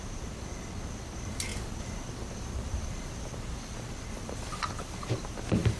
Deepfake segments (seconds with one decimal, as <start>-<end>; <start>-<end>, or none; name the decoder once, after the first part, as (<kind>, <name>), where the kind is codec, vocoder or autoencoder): 0.0-5.8 (vocoder, BigVGAN v2)